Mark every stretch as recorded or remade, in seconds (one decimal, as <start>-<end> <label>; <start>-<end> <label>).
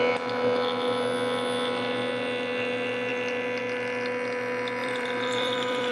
0.0-4.8 recorded; 4.8-5.9 remade